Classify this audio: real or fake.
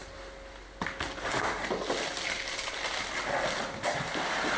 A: real